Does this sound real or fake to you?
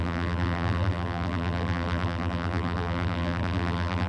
fake